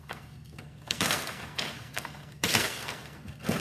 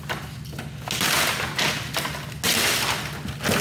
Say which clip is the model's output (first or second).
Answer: first